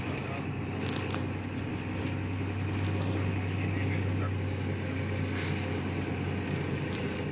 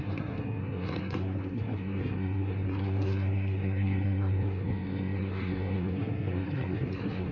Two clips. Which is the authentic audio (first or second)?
first